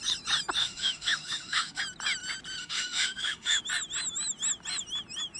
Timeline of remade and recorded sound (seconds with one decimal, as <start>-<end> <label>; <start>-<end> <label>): 0.0-0.6 recorded; 0.6-1.8 remade; 1.8-2.6 recorded; 2.6-3.6 remade; 3.6-5.4 recorded